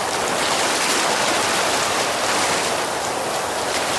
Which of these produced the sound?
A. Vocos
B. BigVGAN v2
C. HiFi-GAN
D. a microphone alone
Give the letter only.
D